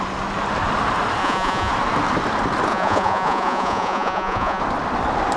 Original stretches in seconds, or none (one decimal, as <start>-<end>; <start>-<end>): 0.0-1.2; 1.7-2.7; 4.6-5.4